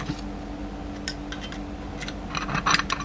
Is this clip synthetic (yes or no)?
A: no